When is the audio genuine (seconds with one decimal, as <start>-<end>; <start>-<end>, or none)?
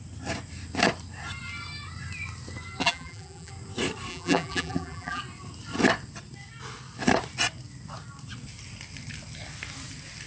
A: 0.0-2.8; 3.5-4.1; 5.2-10.3